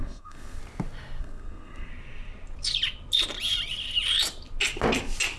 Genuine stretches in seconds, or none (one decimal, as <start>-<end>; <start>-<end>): 0.6-1.2; 1.9-5.4